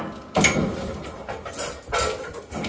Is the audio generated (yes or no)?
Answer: no